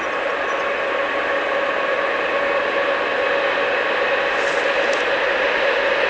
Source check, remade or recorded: recorded